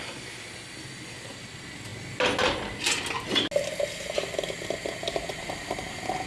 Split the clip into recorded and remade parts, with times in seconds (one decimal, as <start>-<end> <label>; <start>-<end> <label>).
0.0-6.3 recorded